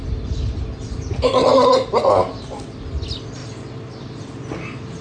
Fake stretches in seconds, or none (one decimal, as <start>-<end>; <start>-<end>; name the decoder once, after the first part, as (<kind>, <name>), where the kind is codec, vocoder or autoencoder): none

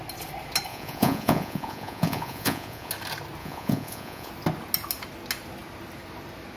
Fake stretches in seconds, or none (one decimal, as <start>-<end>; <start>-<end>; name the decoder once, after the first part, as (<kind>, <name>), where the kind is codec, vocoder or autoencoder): 0.7-2.9 (vocoder, Vocos); 3.4-4.3

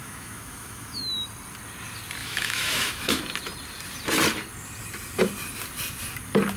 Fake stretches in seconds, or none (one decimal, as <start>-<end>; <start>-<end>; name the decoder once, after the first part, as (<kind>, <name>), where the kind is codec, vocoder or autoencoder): 0.0-1.0 (autoencoder, DAC-VAE); 2.2-3.2

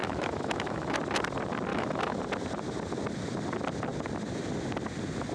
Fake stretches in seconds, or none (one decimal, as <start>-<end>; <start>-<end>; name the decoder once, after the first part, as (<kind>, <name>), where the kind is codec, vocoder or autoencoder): 0.0-1.0 (autoencoder, DAC-VAE); 1.7-2.2

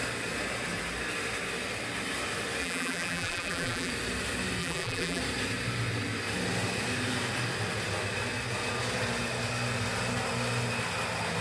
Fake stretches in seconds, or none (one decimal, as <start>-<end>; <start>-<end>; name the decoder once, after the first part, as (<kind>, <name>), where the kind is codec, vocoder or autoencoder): 2.6-3.9 (vocoder, BigVGAN v2); 4.6-5.2

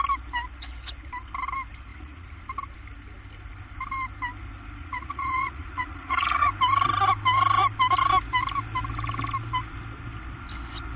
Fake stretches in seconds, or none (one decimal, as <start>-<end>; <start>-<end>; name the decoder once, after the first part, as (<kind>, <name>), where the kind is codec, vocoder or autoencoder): 1.9-2.4 (vocoder, Vocos); 4.8-6.5